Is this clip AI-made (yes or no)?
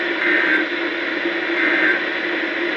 no